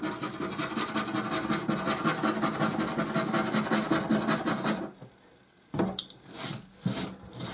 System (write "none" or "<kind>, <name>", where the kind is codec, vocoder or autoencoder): none